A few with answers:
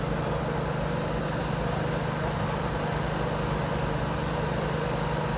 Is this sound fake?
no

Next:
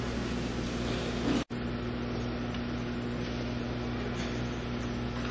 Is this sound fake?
no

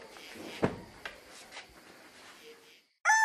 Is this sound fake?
no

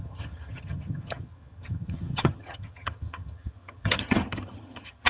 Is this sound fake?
yes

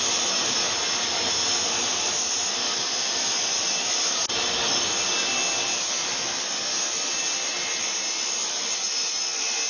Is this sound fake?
no